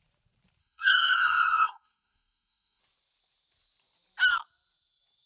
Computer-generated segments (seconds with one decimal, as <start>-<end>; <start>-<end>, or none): 0.6-2.8